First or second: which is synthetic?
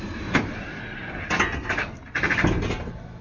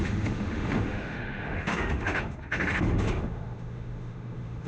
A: second